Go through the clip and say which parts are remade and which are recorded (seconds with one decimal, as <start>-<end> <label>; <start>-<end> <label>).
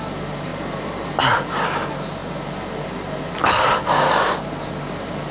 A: 0.0-5.3 recorded